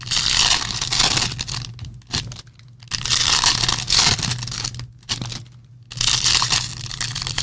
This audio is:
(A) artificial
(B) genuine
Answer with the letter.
B